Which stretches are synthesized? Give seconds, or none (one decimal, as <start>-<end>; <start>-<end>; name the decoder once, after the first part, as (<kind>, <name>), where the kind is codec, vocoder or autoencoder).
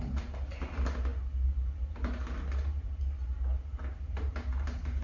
none